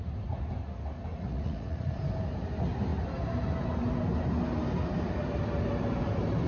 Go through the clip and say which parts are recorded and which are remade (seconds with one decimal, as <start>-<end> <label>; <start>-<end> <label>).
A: 0.0-1.1 recorded; 1.1-2.0 remade; 2.0-6.5 recorded